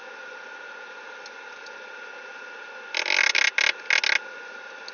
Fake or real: real